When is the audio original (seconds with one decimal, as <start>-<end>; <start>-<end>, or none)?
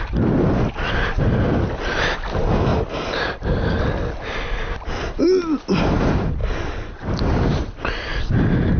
0.0-8.8